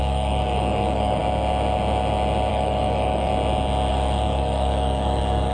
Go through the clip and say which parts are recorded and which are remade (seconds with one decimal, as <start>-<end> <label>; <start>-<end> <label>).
0.0-1.2 remade; 1.2-2.5 recorded; 2.5-3.3 remade; 3.3-3.9 recorded; 3.9-5.5 remade